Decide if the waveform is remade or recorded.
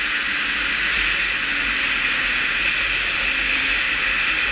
recorded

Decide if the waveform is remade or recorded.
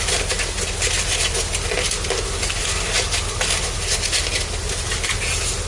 recorded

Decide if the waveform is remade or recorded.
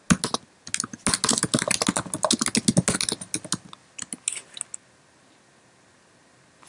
recorded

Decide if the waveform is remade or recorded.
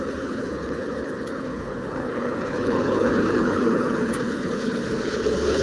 remade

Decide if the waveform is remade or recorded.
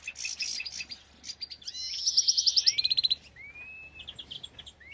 recorded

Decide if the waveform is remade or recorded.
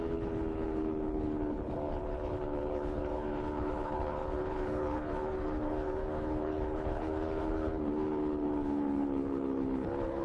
remade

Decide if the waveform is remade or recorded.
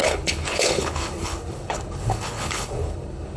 remade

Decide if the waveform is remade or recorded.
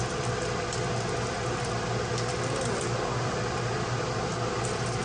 recorded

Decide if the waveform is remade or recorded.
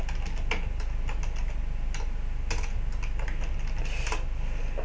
recorded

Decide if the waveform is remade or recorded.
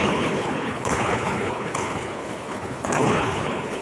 remade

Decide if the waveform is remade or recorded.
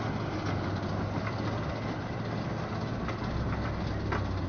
recorded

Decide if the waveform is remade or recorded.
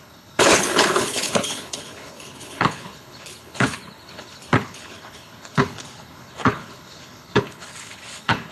remade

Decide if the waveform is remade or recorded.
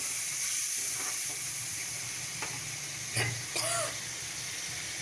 recorded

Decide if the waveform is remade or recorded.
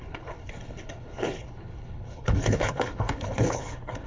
remade